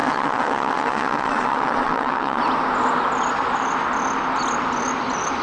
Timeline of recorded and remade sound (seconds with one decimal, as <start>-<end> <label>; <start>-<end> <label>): 0.0-2.4 remade; 2.4-5.4 recorded